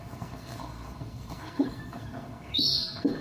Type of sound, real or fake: fake